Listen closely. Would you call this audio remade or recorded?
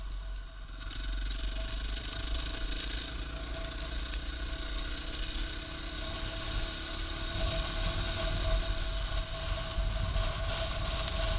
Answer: recorded